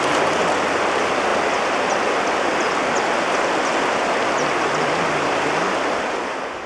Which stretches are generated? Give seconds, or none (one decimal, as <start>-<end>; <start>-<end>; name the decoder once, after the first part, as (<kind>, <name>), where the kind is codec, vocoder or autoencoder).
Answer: none